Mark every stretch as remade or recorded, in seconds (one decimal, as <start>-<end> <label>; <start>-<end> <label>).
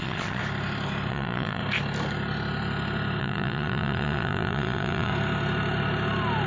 0.0-0.4 remade; 0.4-1.1 recorded; 1.1-1.6 remade; 1.6-3.2 recorded; 3.2-5.1 remade; 5.1-6.5 recorded